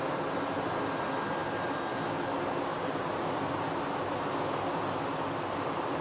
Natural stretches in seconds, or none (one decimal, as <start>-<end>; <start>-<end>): 0.0-6.0